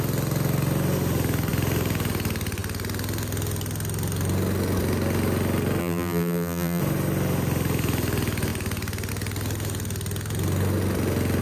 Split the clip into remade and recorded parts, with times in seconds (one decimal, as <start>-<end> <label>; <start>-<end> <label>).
0.0-5.8 recorded; 5.8-6.8 remade; 6.8-11.4 recorded